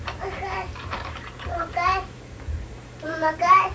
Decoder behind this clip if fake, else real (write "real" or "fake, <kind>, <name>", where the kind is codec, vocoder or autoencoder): fake, vocoder, BigVGAN v2